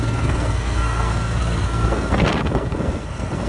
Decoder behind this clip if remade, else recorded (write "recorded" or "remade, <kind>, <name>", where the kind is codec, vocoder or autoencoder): remade, codec, SNAC